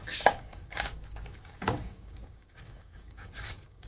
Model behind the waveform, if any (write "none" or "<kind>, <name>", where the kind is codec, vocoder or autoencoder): codec, DAC